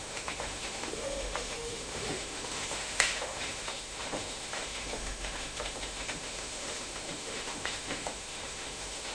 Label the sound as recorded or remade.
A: remade